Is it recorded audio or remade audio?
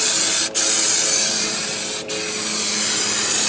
recorded